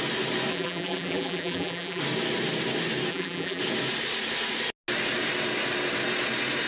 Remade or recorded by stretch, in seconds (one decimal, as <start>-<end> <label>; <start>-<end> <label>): 0.0-0.5 recorded; 0.5-2.0 remade; 2.0-3.1 recorded; 3.1-3.6 remade; 3.6-6.7 recorded